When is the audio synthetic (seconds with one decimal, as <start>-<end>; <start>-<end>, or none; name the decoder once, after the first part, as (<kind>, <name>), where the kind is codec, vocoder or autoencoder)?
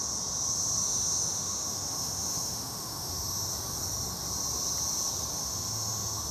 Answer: 0.8-3.5 (autoencoder, DAC-VAE); 5.4-6.3